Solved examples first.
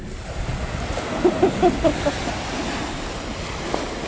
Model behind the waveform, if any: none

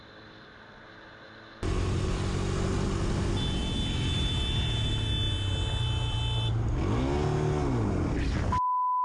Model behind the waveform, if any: none